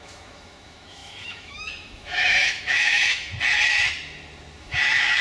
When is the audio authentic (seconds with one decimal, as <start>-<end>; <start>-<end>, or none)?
3.3-4.6